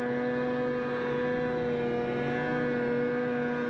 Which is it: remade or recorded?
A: recorded